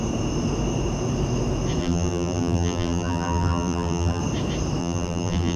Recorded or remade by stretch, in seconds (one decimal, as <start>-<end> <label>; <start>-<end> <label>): 0.0-1.8 recorded; 1.8-4.2 remade; 4.2-4.8 recorded; 4.8-5.6 remade